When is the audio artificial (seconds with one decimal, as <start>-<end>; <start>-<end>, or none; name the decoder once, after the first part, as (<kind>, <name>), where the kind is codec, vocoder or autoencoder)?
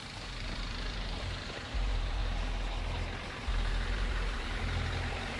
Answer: 0.0-2.2 (vocoder, BigVGAN v2); 3.7-5.4